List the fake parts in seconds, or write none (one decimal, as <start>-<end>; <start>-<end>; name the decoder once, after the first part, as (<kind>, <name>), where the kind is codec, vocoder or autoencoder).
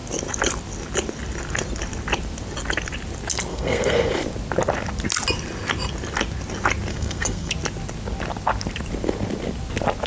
3.5-4.1 (codec, SNAC); 6.9-7.5